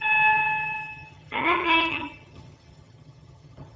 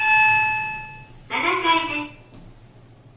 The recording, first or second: second